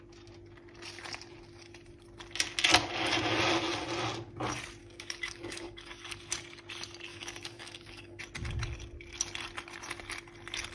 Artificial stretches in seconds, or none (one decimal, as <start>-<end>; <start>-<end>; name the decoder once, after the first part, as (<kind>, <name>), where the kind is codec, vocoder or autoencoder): 4.8-6.2 (codec, DAC); 7.1-8.2